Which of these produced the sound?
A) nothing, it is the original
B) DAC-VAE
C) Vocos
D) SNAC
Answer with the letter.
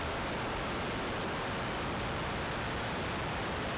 A